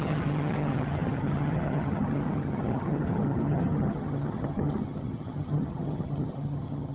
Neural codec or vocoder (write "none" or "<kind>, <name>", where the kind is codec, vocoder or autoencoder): vocoder, HiFi-GAN